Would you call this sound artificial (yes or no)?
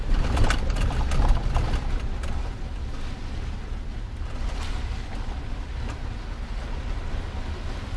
no